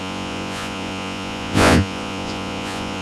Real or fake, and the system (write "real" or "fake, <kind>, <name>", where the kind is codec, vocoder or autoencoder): fake, vocoder, Vocos